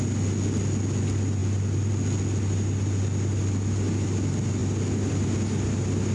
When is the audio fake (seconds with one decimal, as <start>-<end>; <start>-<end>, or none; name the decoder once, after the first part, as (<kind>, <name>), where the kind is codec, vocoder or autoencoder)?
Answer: 1.4-1.9 (vocoder, BigVGAN v2)